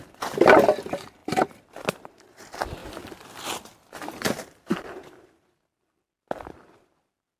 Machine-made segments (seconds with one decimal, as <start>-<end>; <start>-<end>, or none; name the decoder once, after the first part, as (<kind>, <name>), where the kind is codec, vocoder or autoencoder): none